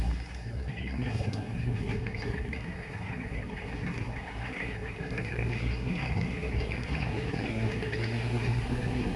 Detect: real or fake fake